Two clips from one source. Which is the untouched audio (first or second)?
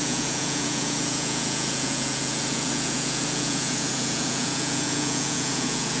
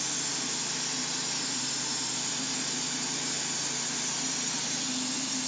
second